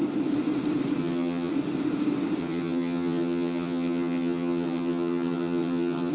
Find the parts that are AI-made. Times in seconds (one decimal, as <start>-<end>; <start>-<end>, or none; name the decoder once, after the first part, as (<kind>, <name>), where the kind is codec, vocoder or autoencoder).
1.0-1.5 (vocoder, HiFi-GAN); 2.4-6.1